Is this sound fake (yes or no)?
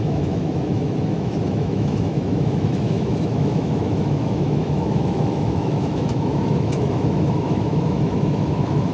yes